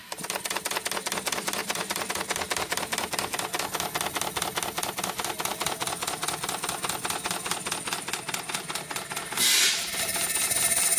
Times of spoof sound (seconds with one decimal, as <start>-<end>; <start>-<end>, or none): 1.6-2.1; 5.5-6.6